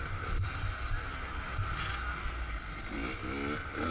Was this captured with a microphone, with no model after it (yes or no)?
yes